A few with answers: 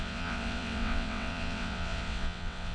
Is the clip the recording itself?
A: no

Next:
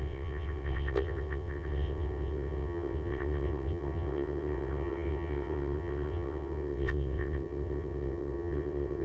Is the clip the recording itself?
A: no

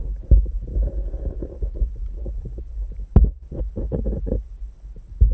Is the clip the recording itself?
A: yes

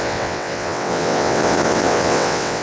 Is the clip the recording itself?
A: no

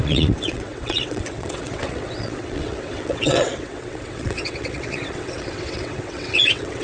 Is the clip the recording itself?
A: no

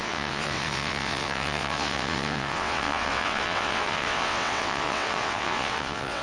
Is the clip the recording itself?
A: no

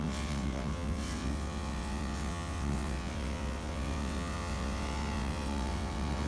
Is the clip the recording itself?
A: no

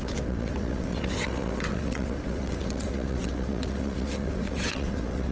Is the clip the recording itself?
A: no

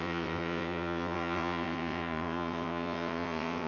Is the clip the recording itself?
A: no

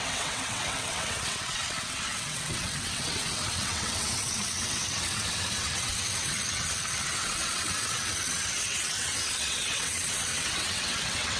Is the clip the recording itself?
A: no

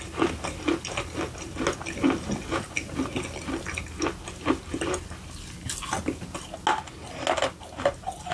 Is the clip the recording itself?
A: yes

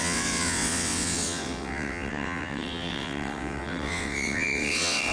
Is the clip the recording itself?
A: no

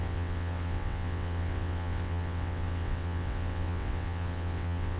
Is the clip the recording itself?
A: no